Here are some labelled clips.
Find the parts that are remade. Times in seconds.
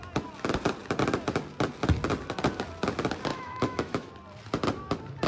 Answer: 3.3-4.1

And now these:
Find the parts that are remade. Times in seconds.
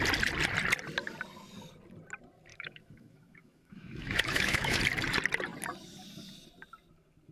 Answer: 2.5-4.8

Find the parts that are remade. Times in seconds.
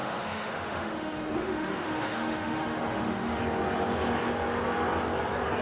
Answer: 0.0-3.4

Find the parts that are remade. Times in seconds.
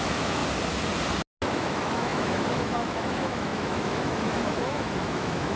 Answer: 0.0-0.4; 1.5-5.6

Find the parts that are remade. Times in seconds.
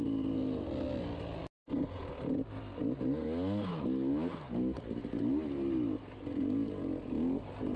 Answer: none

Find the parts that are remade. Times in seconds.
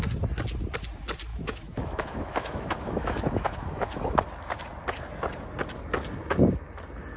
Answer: 1.3-4.2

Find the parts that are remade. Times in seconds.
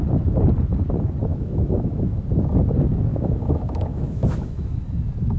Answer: 1.3-2.2; 3.1-4.8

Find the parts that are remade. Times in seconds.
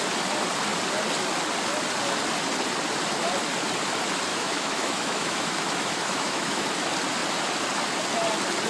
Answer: 4.3-6.6